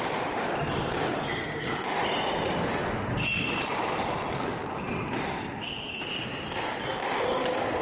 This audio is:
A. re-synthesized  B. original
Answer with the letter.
B